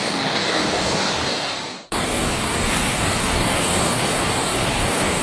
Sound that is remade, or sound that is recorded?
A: remade